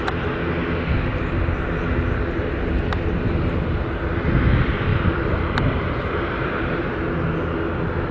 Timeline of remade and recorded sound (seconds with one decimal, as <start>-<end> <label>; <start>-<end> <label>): 0.0-4.9 recorded; 4.9-6.8 remade; 6.8-8.1 recorded